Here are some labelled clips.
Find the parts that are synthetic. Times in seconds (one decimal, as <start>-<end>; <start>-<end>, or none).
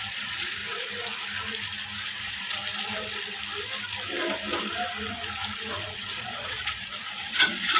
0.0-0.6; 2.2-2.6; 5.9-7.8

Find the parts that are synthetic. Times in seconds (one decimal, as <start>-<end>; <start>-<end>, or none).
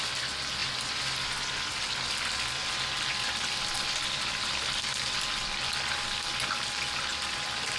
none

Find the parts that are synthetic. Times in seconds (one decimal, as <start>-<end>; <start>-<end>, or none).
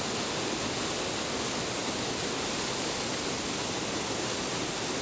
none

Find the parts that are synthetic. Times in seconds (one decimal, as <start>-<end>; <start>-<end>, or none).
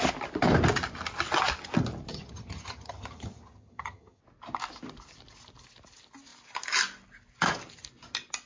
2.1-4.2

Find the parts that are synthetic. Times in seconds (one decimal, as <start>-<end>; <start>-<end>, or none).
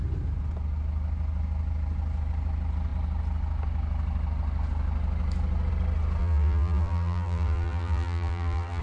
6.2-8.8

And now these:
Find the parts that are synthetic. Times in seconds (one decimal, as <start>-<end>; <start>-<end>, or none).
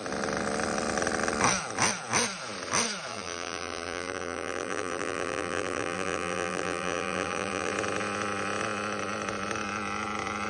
3.1-7.7